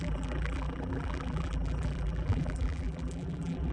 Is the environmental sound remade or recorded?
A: remade